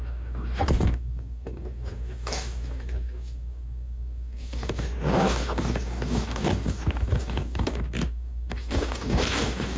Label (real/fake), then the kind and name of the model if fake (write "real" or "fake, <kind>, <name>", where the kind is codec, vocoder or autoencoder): fake, codec, DAC